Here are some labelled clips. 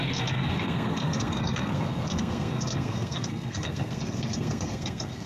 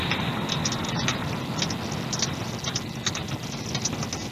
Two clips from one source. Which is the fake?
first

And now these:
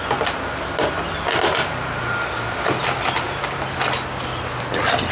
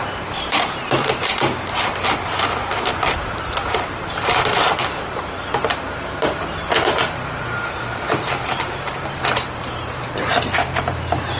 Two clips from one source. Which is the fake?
second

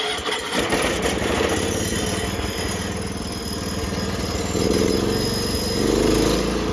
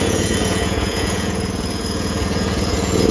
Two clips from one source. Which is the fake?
second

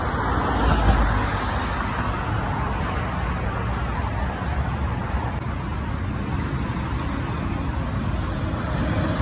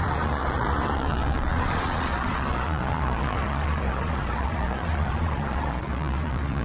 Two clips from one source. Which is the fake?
second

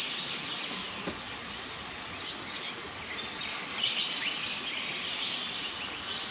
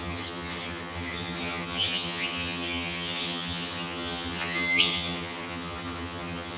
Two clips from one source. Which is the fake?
second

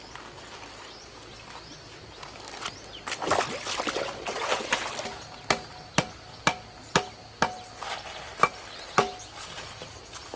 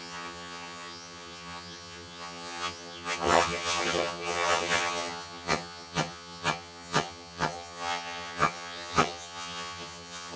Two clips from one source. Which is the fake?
second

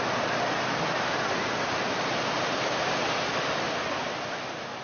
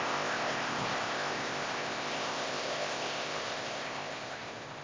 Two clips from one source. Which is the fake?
second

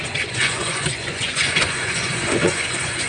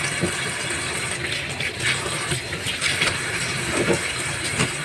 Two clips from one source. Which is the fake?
first